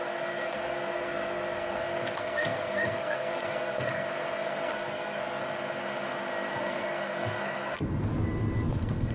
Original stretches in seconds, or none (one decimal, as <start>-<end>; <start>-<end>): 5.4-6.5; 8.1-8.7